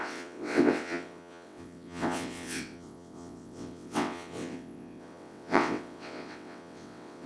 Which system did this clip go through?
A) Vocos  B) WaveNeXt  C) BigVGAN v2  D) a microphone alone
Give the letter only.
B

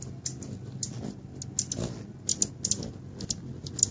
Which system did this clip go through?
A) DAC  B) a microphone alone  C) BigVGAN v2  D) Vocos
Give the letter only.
B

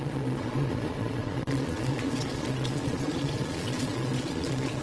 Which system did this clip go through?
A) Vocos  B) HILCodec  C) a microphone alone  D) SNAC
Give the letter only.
A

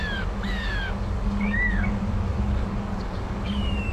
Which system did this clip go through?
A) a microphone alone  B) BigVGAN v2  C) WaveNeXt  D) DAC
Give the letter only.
D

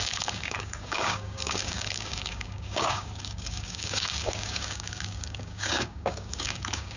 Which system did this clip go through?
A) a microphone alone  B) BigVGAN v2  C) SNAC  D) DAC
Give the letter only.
D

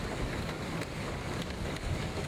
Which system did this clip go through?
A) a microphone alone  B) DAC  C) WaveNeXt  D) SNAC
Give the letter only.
B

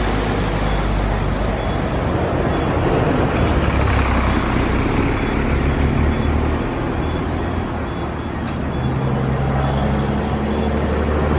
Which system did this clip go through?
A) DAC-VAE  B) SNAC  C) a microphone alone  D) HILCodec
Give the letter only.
C